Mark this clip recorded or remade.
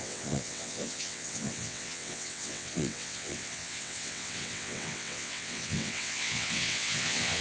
remade